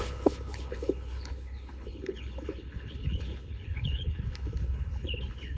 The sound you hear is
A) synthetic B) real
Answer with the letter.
A